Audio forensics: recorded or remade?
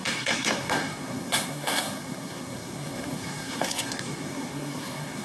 remade